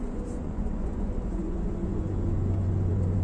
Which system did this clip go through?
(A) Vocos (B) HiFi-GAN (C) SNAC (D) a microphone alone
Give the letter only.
A